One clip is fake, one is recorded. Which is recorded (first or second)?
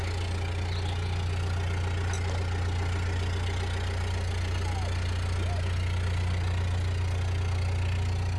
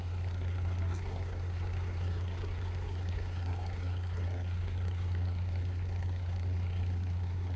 first